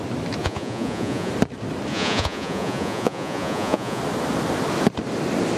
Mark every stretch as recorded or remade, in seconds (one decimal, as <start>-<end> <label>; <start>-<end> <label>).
0.0-0.4 recorded; 0.4-1.3 remade; 1.3-1.9 recorded; 1.9-4.0 remade; 4.0-5.6 recorded